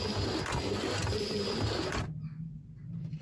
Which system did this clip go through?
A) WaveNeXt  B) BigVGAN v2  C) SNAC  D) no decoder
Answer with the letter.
D